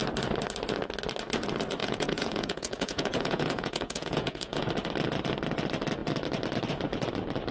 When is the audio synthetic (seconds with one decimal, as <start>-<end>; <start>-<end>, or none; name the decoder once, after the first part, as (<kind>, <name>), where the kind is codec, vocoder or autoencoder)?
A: 1.8-4.7 (vocoder, Vocos)